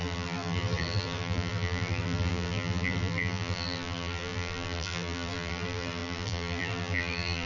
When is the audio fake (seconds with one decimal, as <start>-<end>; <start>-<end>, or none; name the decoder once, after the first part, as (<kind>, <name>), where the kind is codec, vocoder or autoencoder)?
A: 0.0-7.5 (vocoder, BigVGAN v2)